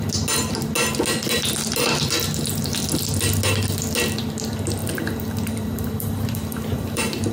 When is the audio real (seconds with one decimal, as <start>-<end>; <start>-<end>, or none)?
0.0-4.8